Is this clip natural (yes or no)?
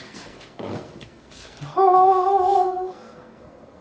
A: no